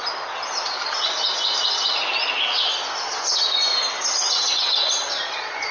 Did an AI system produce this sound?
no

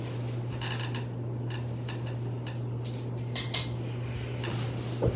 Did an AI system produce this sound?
no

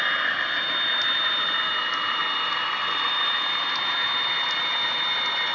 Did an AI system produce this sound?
no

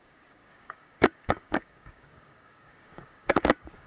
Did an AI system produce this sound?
yes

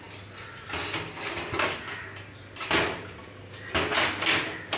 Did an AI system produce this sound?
no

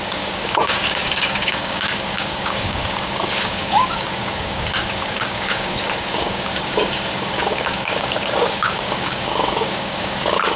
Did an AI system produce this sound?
yes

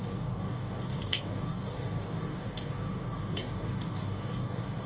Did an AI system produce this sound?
yes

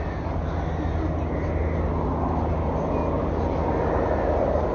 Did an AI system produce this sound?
no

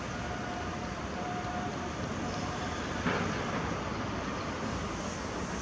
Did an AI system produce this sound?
no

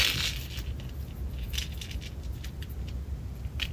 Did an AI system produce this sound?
no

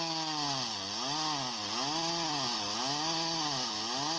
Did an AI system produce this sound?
no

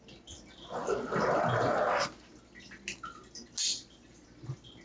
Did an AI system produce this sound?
no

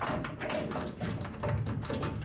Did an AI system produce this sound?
no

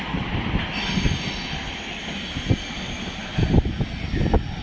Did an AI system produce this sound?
no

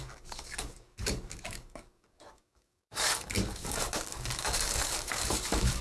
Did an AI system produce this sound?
yes